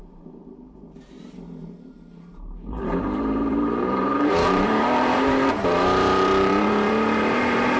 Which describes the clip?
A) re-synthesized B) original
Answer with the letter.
A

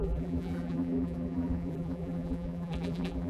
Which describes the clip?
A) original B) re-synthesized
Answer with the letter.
B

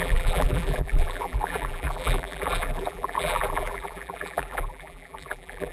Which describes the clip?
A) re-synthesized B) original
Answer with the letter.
A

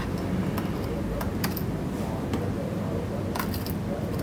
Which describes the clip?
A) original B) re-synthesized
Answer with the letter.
A